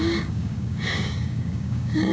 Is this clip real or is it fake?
fake